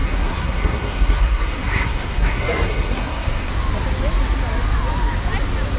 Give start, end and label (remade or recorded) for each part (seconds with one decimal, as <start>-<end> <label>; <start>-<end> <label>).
0.0-3.5 remade; 3.5-5.8 recorded